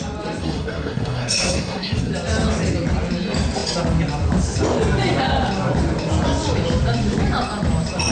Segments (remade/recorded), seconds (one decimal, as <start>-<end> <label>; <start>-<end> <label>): 0.0-0.4 recorded; 0.4-2.1 remade; 2.1-8.1 recorded